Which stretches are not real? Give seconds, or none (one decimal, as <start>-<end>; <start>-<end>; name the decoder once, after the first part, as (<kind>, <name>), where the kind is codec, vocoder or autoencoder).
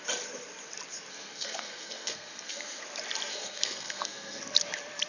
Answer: 1.1-2.8 (codec, SNAC); 3.3-4.4